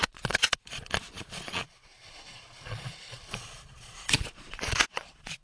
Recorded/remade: remade